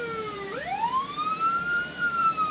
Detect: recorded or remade remade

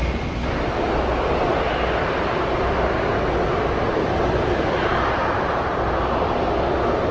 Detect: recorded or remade remade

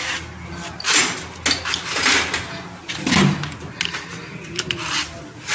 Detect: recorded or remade recorded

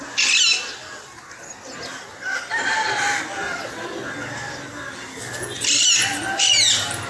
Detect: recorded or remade recorded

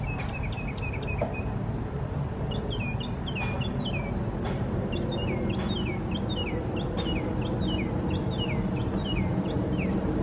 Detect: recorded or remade recorded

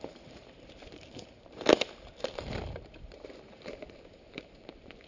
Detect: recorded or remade remade